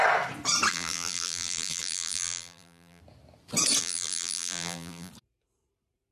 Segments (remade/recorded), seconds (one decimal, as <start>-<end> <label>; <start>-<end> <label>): 0.0-0.7 recorded; 0.7-3.0 remade; 3.0-3.8 recorded; 3.8-5.1 remade; 5.1-6.1 recorded